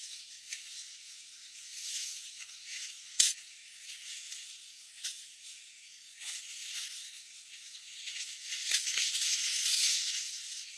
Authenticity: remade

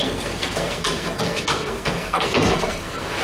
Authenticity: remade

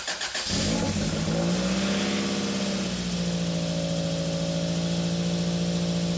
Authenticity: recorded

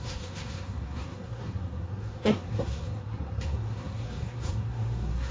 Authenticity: remade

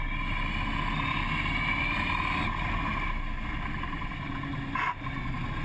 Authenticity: recorded